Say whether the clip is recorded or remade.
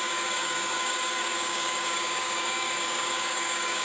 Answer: remade